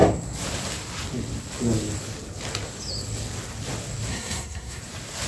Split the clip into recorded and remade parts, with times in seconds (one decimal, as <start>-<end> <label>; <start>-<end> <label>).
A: 0.0-4.1 recorded; 4.1-4.8 remade; 4.8-5.3 recorded